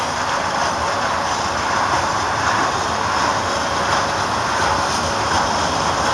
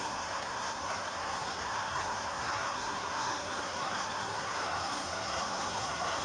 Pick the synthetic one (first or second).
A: second